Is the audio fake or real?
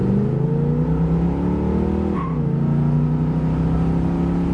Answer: real